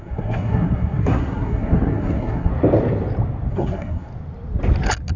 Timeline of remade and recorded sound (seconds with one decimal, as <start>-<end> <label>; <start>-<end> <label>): 0.0-2.5 remade; 2.5-3.5 recorded; 3.5-4.1 remade; 4.1-5.2 recorded